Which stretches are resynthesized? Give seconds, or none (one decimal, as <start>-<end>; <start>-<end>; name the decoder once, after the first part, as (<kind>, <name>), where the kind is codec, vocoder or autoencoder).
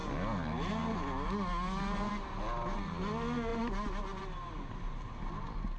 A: none